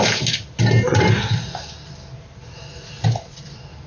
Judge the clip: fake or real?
real